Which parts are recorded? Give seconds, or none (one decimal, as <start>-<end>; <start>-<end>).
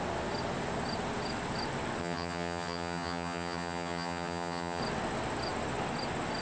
0.0-2.0; 4.8-6.4